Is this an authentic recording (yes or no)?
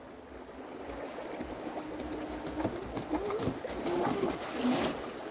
yes